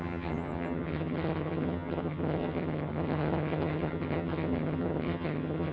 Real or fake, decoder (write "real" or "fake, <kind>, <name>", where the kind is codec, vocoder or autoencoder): fake, vocoder, HiFi-GAN